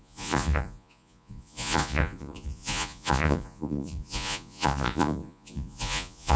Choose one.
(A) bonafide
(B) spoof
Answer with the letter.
B